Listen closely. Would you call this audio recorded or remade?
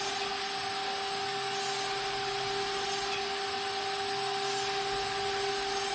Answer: recorded